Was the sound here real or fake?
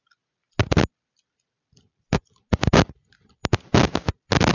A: real